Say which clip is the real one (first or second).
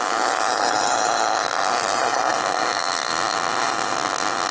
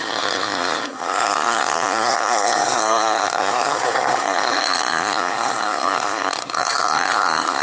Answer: first